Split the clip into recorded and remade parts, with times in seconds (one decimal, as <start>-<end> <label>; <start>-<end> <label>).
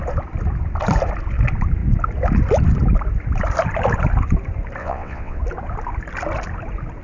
0.0-4.8 recorded; 4.8-5.4 remade; 5.4-7.0 recorded